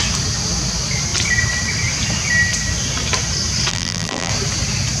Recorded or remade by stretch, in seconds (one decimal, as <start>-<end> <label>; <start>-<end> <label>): 0.0-3.7 recorded; 3.7-4.3 remade; 4.3-5.0 recorded